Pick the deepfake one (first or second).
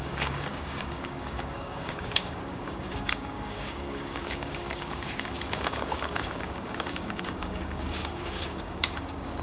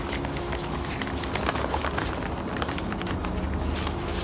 first